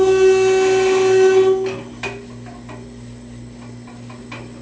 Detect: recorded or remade recorded